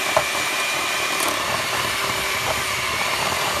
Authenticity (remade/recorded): remade